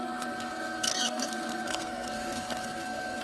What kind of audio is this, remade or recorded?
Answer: remade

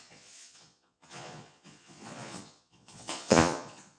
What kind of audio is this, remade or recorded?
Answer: remade